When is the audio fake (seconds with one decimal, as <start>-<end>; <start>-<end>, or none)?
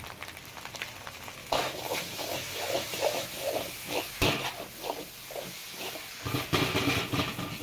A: 1.4-4.3; 5.6-6.1